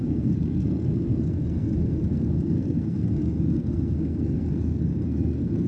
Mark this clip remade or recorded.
remade